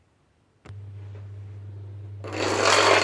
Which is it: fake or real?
real